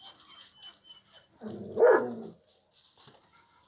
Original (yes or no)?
yes